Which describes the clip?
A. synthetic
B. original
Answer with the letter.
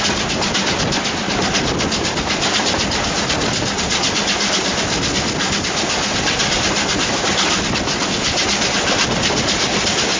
B